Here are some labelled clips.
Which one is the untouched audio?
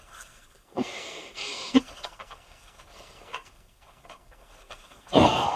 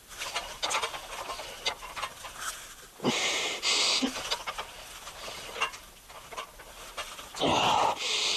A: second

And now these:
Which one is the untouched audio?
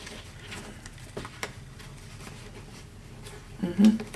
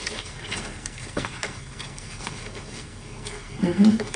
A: first